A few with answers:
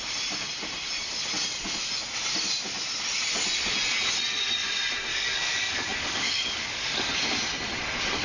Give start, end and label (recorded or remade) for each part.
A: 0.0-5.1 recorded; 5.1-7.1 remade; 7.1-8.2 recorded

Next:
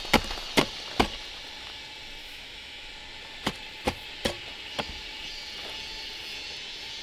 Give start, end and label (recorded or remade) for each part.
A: 0.0-2.2 recorded; 2.2-2.9 remade; 2.9-7.0 recorded